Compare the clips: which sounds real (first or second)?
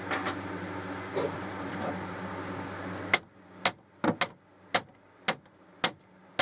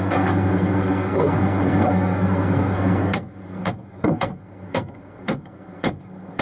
first